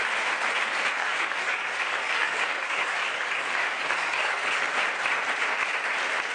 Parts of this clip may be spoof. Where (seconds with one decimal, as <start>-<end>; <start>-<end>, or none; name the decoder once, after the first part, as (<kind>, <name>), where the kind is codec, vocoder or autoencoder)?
1.0-4.8 (codec, DAC)

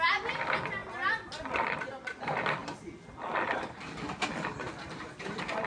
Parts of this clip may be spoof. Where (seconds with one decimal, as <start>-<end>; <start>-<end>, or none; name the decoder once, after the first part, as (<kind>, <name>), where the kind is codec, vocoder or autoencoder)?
none

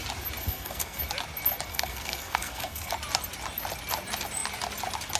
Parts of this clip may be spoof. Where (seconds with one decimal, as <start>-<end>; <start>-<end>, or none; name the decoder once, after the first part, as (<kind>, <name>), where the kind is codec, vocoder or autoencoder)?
0.4-1.0 (codec, SNAC); 1.7-2.9

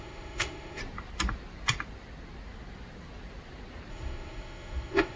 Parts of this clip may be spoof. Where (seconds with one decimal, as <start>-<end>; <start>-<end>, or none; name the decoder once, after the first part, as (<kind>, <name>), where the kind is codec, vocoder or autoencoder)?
0.0-0.8 (autoencoder, DAC-VAE); 3.9-5.2

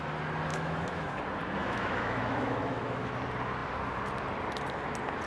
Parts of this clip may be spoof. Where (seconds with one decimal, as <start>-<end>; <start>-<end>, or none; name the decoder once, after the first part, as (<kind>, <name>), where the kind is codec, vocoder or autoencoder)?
0.5-1.2 (autoencoder, DAC-VAE); 1.6-3.1

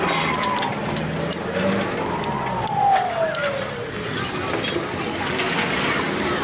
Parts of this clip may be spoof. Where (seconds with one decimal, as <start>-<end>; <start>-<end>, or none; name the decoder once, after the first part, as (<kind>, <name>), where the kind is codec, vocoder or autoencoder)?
none

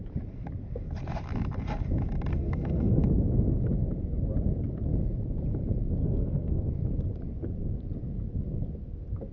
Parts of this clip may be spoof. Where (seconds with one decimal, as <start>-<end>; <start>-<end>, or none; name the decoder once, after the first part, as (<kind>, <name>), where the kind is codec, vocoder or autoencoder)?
2.3-3.0 (codec, SNAC); 6.0-6.7